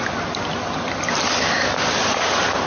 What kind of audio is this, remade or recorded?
recorded